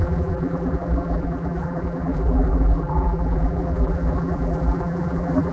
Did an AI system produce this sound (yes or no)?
yes